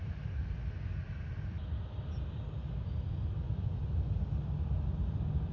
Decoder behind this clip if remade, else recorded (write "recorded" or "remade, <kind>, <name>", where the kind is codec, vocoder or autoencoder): recorded